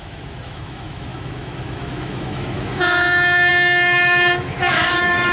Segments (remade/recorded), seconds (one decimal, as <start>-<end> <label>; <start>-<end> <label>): 0.0-5.3 remade